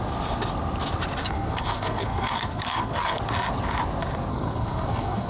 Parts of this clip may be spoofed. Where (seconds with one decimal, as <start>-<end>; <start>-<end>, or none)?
1.2-3.2; 4.3-5.3